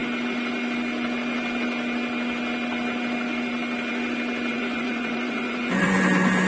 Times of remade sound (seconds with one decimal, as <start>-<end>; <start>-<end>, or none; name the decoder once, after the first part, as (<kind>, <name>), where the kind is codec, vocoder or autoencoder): 4.5-6.0 (vocoder, Vocos)